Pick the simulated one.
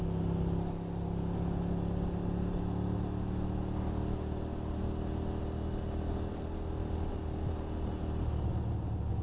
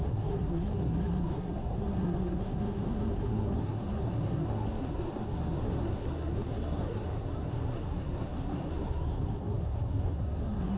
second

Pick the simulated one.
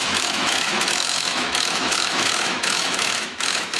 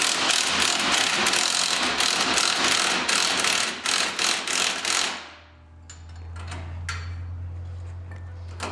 first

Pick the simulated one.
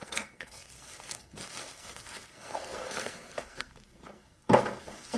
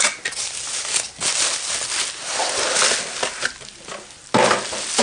first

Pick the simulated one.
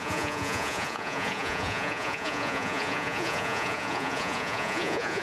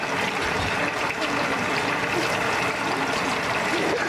first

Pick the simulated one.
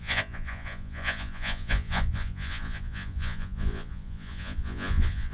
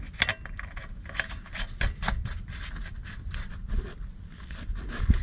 first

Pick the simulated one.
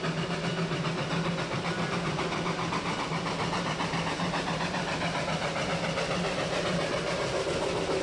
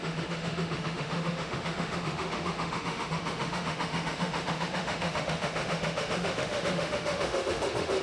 second